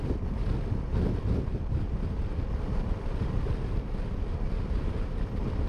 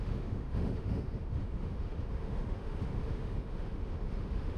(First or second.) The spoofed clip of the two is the second